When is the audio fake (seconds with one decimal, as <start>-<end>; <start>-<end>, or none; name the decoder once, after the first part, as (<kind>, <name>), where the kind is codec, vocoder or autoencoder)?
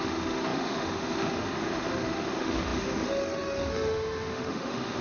0.0-5.0 (autoencoder, DAC-VAE)